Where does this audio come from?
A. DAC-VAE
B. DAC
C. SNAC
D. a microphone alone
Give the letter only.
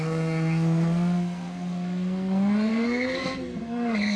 C